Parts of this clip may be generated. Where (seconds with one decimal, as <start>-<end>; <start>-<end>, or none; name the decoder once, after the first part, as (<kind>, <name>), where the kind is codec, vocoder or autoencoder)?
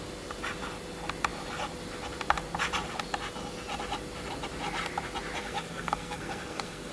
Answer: 5.4-6.9 (codec, SNAC)